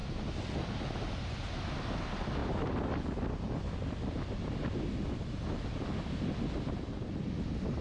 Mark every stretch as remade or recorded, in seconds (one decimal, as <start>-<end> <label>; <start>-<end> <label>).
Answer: 0.0-7.8 recorded